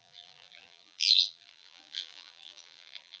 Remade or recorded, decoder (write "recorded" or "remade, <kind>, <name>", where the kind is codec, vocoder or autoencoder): remade, vocoder, BigVGAN v2